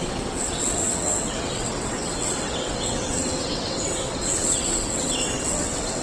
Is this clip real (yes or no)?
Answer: no